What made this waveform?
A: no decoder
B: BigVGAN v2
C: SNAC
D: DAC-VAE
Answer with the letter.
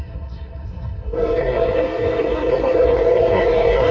C